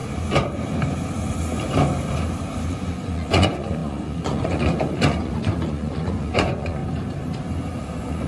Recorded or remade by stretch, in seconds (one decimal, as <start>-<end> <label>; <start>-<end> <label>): 0.0-2.7 recorded; 2.7-6.8 remade; 6.8-7.8 recorded; 7.8-8.3 remade